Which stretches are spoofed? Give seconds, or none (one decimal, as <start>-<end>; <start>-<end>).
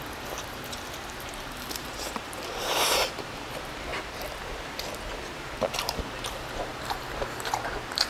0.0-8.1